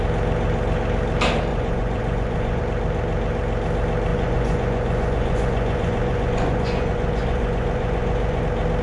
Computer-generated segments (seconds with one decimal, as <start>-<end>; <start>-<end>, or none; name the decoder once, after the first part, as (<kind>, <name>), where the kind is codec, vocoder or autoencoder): 1.5-2.6 (vocoder, Vocos); 4.1-8.4